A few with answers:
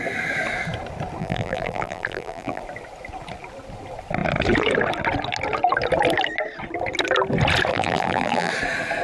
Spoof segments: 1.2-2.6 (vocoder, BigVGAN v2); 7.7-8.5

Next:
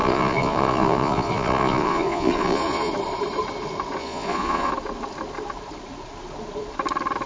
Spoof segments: 0.0-2.9 (vocoder, Vocos); 4.0-4.7

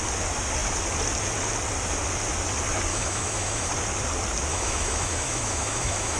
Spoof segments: 2.9-3.7 (autoencoder, DAC-VAE); 4.5-6.2

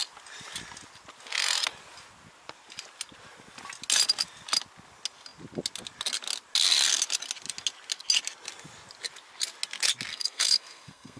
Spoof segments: 10.1-11.2 (codec, SNAC)

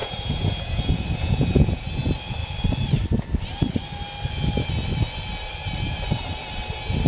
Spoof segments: 0.0-1.9 (vocoder, Vocos)

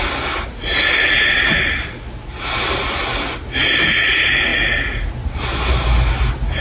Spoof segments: none